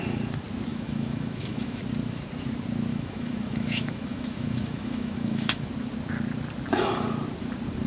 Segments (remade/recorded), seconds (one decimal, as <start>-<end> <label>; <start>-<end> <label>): 0.0-0.7 recorded; 0.7-1.8 remade; 1.8-2.9 recorded; 2.9-5.7 remade; 5.7-7.9 recorded